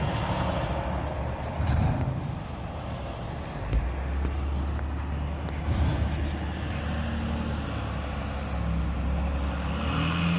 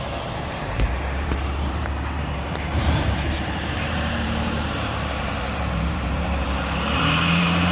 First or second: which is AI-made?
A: second